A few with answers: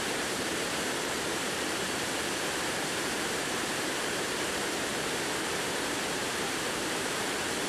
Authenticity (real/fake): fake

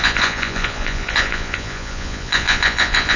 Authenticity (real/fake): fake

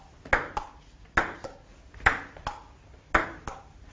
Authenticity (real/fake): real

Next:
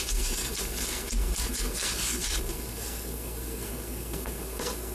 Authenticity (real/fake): fake